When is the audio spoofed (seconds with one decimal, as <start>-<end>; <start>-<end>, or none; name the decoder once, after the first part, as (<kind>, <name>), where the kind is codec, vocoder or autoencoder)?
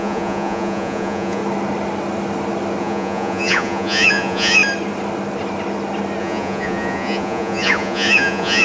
0.0-1.4 (vocoder, Vocos); 2.8-4.6; 6.2-8.6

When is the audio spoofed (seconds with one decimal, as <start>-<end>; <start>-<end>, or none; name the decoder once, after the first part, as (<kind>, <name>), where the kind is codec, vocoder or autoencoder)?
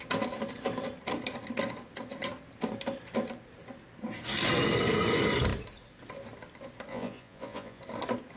6.9-7.8 (vocoder, Vocos)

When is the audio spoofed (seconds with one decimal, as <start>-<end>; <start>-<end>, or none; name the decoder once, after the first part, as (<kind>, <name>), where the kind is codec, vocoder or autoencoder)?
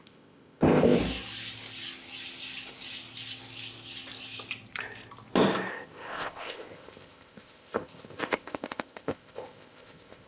0.0-1.0 (codec, ZipCodec); 5.7-10.3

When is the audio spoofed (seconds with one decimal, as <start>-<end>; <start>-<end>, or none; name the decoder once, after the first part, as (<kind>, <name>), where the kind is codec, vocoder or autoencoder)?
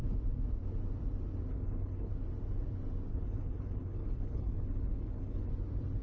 1.5-2.1 (codec, HILCodec); 3.1-5.5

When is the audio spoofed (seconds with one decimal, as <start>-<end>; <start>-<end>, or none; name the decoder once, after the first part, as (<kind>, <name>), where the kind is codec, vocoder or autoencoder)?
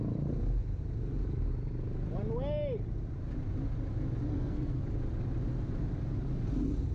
4.3-4.8 (codec, SNAC)